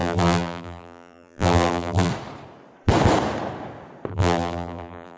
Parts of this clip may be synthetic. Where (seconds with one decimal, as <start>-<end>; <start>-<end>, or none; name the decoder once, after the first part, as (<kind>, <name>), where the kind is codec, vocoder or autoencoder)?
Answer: 0.0-2.1 (vocoder, BigVGAN v2); 4.1-5.2